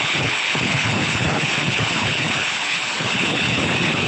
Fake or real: fake